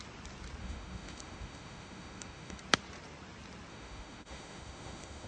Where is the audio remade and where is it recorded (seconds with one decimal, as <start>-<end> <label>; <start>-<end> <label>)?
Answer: 0.0-0.6 recorded; 0.6-2.6 remade; 2.6-3.7 recorded; 3.7-5.3 remade